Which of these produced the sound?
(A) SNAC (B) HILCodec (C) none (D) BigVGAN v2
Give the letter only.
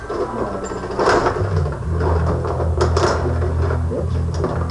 C